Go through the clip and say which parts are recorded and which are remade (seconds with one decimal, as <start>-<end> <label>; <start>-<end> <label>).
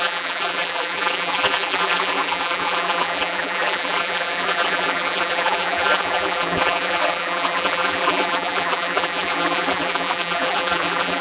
0.0-11.2 remade